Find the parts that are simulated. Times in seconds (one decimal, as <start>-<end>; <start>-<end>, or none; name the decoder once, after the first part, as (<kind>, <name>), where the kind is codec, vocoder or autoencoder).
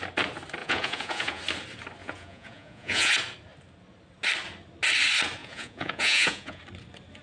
0.6-1.4 (vocoder, Vocos); 2.0-3.1; 5.4-6.6